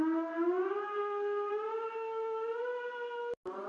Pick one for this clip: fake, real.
real